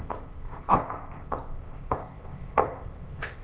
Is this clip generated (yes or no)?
yes